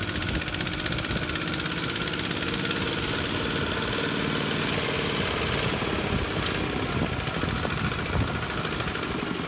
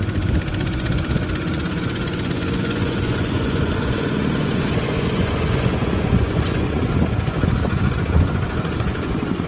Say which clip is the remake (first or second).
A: second